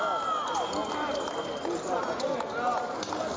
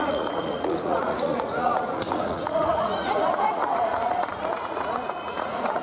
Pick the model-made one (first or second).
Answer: second